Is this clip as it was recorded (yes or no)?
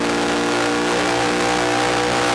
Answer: yes